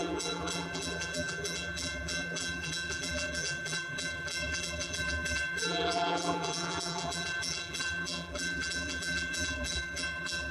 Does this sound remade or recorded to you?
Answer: remade